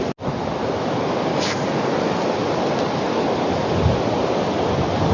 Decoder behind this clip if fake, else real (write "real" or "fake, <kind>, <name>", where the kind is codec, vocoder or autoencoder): real